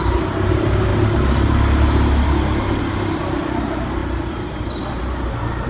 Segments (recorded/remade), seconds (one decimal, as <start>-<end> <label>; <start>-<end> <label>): 0.0-5.7 recorded